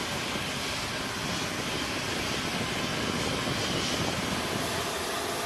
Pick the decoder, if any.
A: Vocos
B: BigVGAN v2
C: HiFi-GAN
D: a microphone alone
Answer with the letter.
D